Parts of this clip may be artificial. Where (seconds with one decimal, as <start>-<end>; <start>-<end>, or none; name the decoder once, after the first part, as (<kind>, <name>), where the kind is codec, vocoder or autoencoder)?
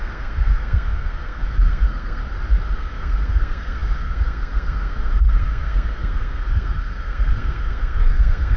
0.0-2.2 (codec, SNAC); 2.8-8.6